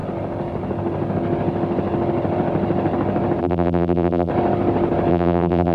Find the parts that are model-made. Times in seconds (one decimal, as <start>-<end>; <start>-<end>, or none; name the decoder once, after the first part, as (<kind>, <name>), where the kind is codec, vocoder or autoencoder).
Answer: 3.4-4.3 (vocoder, BigVGAN v2); 5.1-5.7